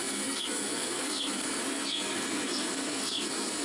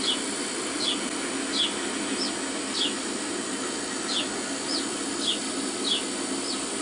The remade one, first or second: first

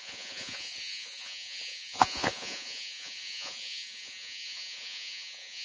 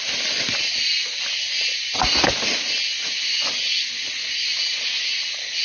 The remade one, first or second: first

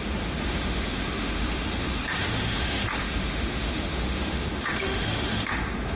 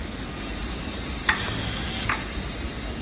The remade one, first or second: first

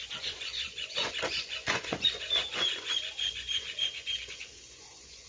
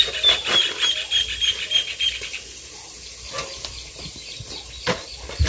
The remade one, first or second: first